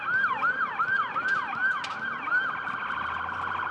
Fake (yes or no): no